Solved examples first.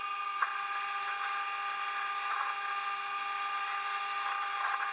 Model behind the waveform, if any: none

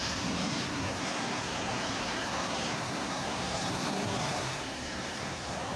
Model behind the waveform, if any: codec, SNAC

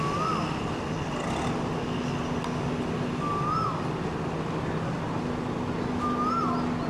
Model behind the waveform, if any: none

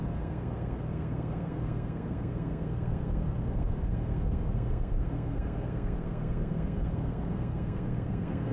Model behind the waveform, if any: codec, SNAC